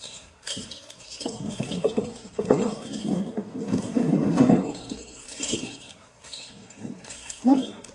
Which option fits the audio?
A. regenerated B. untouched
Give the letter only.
A